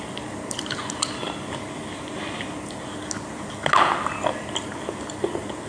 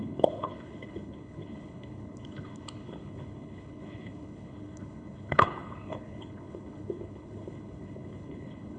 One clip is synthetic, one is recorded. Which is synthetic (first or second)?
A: second